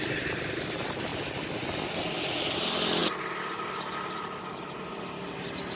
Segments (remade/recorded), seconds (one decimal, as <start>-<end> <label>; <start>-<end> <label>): 0.0-5.8 recorded